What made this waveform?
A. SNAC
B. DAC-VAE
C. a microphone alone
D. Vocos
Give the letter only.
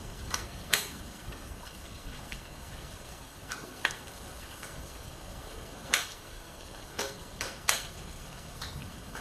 A